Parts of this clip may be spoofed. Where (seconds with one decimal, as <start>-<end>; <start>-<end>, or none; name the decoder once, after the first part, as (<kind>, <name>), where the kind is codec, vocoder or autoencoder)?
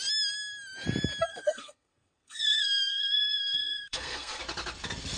1.3-4.4 (codec, SNAC)